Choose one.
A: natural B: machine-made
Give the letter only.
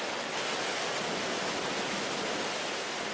A